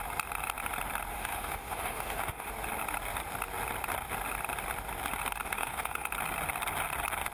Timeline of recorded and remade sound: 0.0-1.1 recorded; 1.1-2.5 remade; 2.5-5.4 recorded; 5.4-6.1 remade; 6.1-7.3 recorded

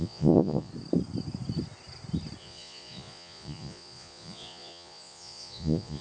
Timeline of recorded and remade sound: 0.0-0.7 remade; 0.7-2.4 recorded; 2.4-6.0 remade

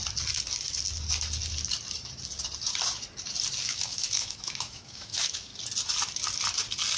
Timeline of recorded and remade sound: 0.0-3.6 recorded; 3.6-5.5 remade; 5.5-7.0 recorded